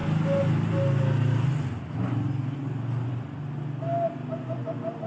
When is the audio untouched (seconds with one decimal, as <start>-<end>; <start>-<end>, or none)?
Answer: 0.0-5.1